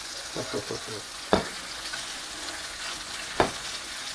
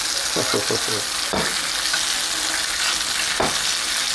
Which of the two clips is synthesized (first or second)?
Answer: first